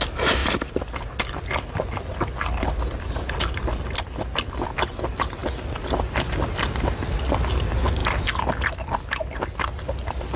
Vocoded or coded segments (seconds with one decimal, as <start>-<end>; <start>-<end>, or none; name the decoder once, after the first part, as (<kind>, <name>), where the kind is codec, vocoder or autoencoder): none